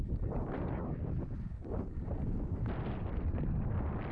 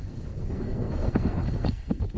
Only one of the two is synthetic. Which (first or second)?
second